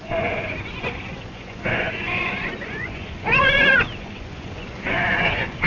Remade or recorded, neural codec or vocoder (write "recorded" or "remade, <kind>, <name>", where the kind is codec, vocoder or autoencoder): remade, vocoder, Vocos